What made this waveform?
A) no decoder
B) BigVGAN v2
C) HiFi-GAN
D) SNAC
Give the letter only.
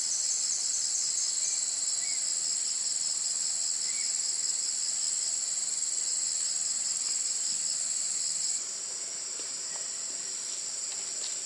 A